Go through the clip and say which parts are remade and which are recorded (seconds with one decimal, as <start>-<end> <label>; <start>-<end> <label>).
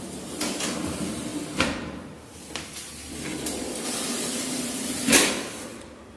0.0-3.3 recorded; 3.3-5.8 remade; 5.8-6.2 recorded